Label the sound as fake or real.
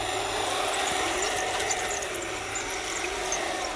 real